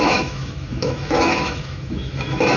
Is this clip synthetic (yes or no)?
yes